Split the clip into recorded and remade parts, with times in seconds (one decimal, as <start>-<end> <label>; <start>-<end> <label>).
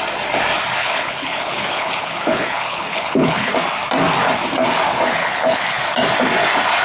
0.0-0.8 recorded; 0.8-3.5 remade; 3.5-5.2 recorded; 5.2-5.8 remade; 5.8-6.8 recorded